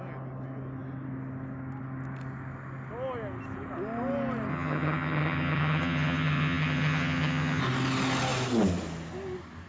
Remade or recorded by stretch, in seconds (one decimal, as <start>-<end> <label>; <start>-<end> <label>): 0.0-4.5 recorded; 4.5-7.6 remade; 7.6-9.7 recorded